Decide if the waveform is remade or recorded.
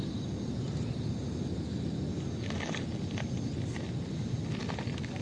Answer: recorded